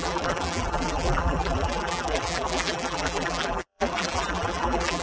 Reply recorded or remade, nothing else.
remade